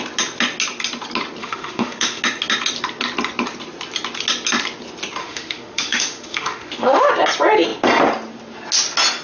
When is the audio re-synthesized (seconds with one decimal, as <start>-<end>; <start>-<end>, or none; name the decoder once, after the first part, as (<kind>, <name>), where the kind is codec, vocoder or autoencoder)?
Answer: 1.4-2.2 (autoencoder, DAC-VAE); 5.2-7.1